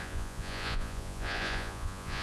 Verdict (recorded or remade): remade